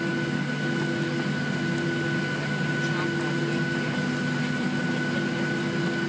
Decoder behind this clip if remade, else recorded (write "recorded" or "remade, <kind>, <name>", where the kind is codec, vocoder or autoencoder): recorded